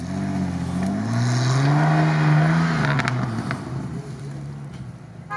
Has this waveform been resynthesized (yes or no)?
no